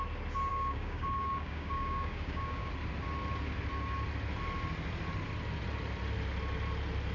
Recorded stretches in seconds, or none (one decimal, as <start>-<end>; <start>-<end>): 0.0-0.5; 2.7-7.1